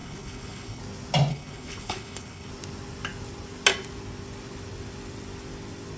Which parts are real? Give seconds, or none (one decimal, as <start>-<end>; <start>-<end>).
0.8-1.3; 2.5-6.0